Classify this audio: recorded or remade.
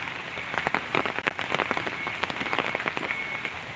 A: recorded